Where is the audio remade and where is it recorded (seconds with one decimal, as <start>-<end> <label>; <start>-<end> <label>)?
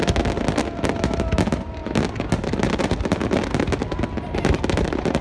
0.0-5.2 recorded